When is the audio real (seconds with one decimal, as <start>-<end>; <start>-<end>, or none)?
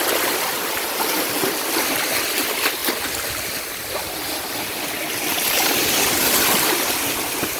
0.0-7.6